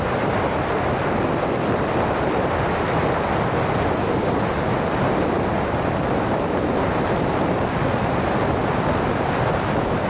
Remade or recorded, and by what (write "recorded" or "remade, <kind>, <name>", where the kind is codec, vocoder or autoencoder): recorded